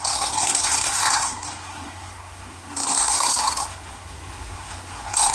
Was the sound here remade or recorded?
remade